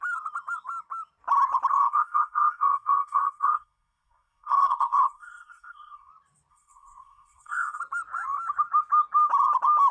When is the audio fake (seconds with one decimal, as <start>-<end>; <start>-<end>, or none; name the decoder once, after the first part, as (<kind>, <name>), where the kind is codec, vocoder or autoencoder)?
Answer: 1.7-6.1 (codec, SNAC); 6.5-7.8